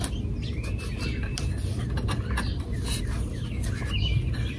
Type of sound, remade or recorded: recorded